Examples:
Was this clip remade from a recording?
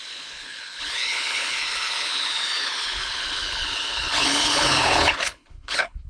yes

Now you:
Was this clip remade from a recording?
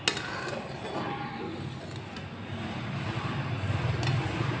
no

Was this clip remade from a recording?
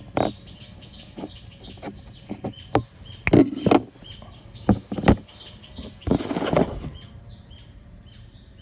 no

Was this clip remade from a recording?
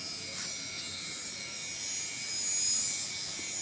no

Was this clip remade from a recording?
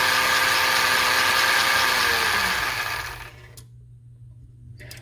no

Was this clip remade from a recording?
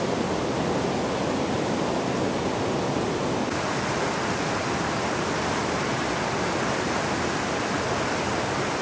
no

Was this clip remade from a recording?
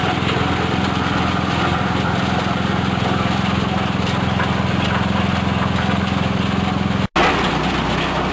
no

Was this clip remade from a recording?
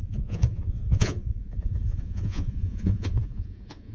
yes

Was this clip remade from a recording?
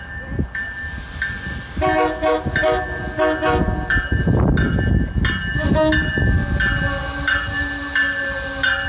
no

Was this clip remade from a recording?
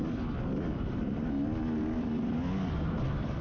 no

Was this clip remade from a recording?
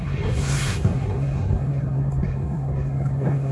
yes